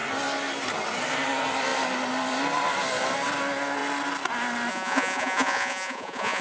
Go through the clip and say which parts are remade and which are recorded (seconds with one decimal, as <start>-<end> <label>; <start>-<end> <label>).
0.0-4.7 recorded; 4.7-6.4 remade